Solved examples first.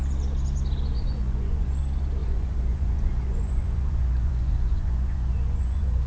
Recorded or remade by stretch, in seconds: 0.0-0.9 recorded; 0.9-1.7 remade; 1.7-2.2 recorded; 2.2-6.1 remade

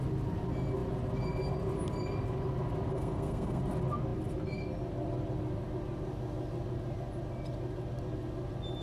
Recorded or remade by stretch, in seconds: 0.0-2.9 recorded; 2.9-3.6 remade; 3.6-8.8 recorded